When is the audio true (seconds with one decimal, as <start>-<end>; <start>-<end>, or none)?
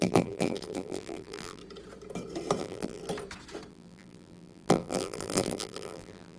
1.6-2.6; 3.0-3.7